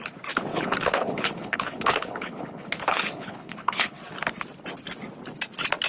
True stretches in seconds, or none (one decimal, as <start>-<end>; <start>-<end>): 0.0-0.5; 4.0-5.9